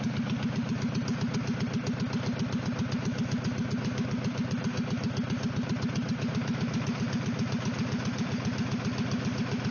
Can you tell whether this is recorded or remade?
recorded